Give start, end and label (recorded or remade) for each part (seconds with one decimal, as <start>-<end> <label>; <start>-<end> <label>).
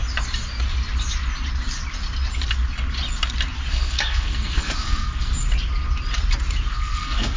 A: 0.0-3.7 recorded; 3.7-5.3 remade; 5.3-6.7 recorded; 6.7-7.4 remade